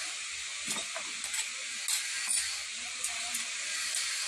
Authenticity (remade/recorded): recorded